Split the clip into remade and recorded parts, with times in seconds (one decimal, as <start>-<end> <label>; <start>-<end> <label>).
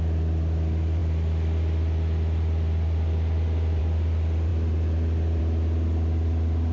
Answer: 0.0-6.7 recorded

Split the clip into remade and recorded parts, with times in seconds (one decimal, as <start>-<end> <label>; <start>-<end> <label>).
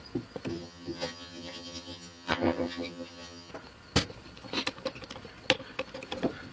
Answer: 0.0-0.5 recorded; 0.5-3.5 remade; 3.5-6.5 recorded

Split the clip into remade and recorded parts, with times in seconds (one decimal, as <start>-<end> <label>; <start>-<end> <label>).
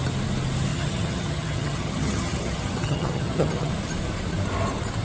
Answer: 0.0-0.7 recorded; 0.7-3.7 remade; 3.7-5.0 recorded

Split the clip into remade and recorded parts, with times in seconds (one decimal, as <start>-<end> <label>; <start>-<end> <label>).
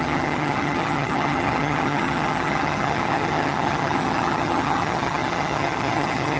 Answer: 0.0-6.4 remade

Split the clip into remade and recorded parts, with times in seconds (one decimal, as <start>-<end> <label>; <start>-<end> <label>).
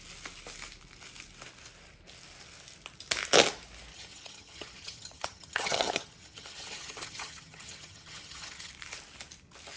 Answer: 0.0-3.9 recorded; 3.9-8.7 remade; 8.7-9.8 recorded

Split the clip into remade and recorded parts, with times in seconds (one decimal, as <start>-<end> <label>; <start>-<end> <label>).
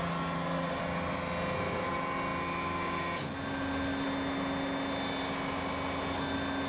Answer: 0.0-6.7 recorded